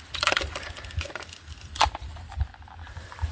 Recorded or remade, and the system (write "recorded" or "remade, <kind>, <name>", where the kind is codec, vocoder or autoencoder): remade, vocoder, BigVGAN v2